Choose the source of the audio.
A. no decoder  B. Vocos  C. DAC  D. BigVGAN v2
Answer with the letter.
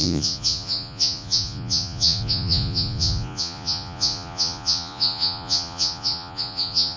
B